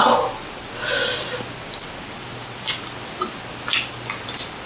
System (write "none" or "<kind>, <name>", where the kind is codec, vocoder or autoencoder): none